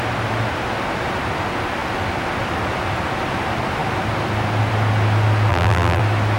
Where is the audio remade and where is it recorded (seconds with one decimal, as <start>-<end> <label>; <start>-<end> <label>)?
0.0-5.5 recorded; 5.5-6.0 remade; 6.0-6.4 recorded